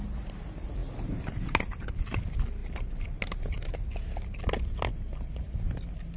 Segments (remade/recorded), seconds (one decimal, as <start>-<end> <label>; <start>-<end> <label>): 0.0-6.2 recorded